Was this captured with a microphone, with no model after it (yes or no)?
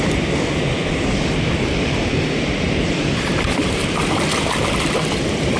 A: yes